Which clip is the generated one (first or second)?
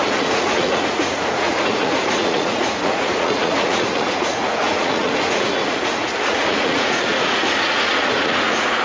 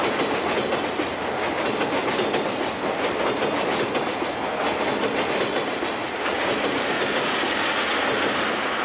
first